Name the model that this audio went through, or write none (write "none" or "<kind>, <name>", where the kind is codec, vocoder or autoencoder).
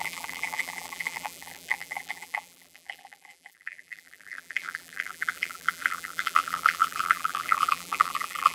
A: vocoder, BigVGAN v2